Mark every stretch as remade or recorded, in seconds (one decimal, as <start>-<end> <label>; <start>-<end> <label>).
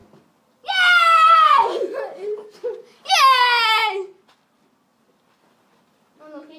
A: 0.0-6.6 recorded